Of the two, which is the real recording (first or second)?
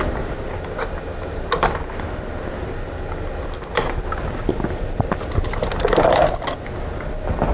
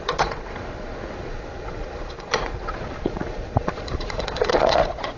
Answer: first